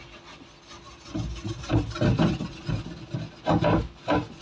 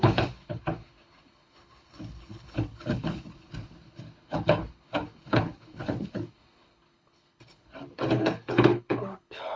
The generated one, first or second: second